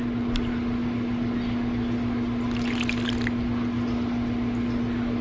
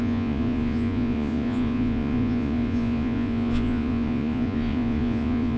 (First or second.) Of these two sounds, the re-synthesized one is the second